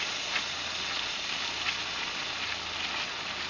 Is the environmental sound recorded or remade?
recorded